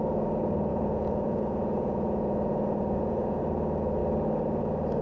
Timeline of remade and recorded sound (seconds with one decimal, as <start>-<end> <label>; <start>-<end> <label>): 0.0-0.7 recorded; 0.7-3.4 remade; 3.4-5.0 recorded